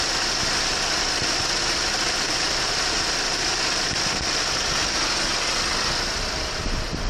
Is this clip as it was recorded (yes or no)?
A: yes